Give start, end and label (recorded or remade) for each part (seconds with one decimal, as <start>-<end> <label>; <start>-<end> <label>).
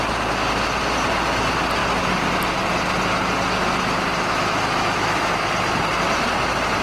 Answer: 0.0-4.3 recorded; 4.3-5.3 remade; 5.3-6.8 recorded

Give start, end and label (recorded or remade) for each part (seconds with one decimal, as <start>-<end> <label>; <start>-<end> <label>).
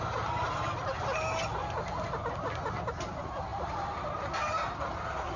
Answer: 0.0-5.4 recorded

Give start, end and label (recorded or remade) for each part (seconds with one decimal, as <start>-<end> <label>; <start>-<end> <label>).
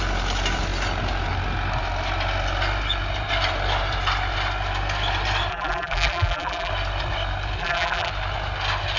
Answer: 0.0-5.5 recorded; 5.5-6.7 remade; 6.7-7.6 recorded; 7.6-8.1 remade; 8.1-9.0 recorded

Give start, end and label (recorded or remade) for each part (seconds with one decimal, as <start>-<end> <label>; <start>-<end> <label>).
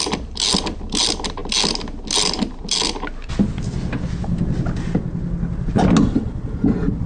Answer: 0.0-7.1 recorded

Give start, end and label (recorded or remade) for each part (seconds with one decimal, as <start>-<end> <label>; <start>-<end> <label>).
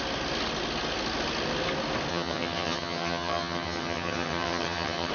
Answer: 0.0-2.1 recorded; 2.1-5.1 remade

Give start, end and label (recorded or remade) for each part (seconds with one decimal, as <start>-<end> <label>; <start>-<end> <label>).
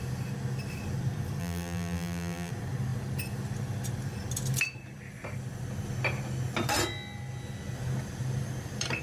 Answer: 0.0-1.4 recorded; 1.4-2.5 remade; 2.5-9.0 recorded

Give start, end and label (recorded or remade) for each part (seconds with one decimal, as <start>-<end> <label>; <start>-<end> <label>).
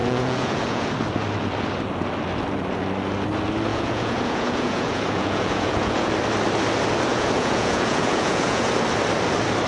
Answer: 0.0-0.9 remade; 0.9-3.7 recorded; 3.7-6.1 remade; 6.1-7.1 recorded; 7.1-8.7 remade; 8.7-9.7 recorded